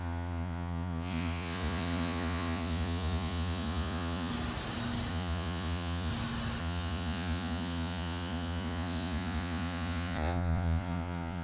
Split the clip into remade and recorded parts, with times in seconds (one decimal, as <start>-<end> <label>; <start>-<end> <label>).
0.0-4.3 remade; 4.3-5.1 recorded; 5.1-6.1 remade; 6.1-6.6 recorded; 6.6-11.4 remade